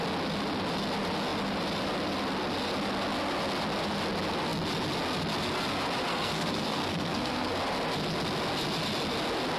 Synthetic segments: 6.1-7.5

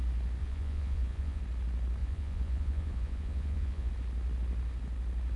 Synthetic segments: 0.4-1.4; 2.0-3.9